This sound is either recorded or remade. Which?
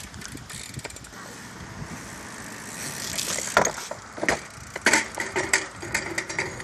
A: recorded